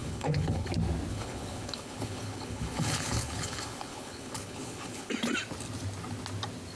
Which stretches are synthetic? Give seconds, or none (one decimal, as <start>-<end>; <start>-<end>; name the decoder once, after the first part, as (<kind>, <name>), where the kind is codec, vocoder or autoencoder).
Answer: 0.0-0.7 (codec, HILCodec); 1.1-5.1